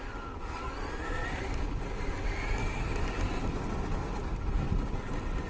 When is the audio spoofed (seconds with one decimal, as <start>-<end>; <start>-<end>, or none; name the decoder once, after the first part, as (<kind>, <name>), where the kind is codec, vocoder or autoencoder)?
2.6-3.2 (codec, DAC); 4.2-4.9

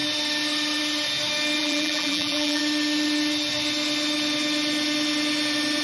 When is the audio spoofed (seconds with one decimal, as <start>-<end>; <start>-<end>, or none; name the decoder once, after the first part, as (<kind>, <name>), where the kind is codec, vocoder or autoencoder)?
1.6-2.6 (vocoder, BigVGAN v2)

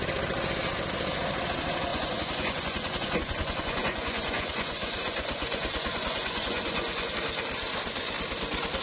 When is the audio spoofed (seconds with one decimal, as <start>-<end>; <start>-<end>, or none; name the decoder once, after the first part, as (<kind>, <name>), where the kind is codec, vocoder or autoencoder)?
1.9-7.1 (vocoder, Vocos)

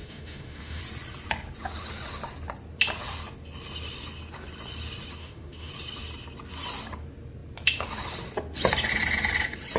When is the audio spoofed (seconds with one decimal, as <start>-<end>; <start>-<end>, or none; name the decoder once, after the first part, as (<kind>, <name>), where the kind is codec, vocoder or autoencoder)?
0.0-0.8 (autoencoder, DAC-VAE); 5.2-5.7

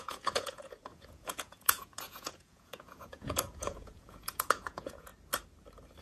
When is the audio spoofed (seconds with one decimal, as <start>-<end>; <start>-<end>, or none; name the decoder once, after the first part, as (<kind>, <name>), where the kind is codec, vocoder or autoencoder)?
0.0-5.1 (vocoder, Vocos)

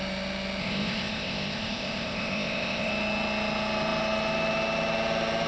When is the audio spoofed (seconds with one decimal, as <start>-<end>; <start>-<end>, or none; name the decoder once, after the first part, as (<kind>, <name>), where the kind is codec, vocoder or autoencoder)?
0.6-2.9 (codec, ZipCodec)